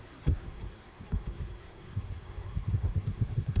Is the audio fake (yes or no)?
yes